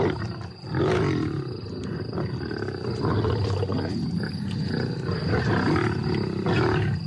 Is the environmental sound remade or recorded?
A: recorded